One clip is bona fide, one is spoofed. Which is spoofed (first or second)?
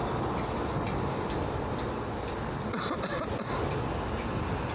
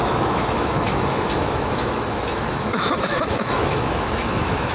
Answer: second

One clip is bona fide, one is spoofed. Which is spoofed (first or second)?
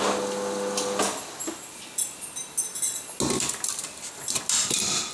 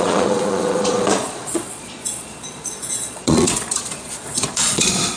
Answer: second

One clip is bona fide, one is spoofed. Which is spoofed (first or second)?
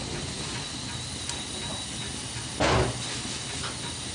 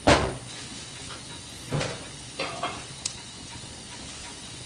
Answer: second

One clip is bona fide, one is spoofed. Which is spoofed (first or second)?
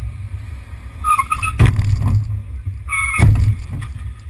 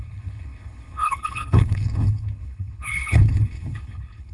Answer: second